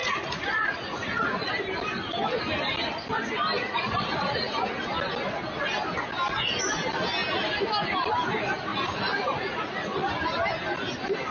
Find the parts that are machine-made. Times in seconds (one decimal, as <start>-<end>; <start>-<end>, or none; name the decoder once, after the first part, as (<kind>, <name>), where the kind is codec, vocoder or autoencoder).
0.0-1.5 (vocoder, Vocos); 3.6-4.8; 8.7-10.1